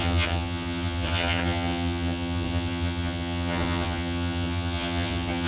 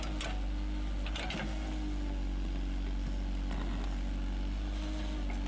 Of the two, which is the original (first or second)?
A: second